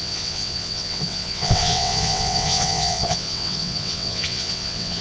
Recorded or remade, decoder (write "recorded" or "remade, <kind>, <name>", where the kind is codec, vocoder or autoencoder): remade, vocoder, WaveNeXt